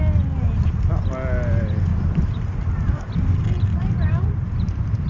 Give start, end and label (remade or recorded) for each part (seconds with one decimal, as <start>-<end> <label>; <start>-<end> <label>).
0.0-1.9 recorded; 1.9-3.1 remade; 3.1-3.7 recorded; 3.7-5.1 remade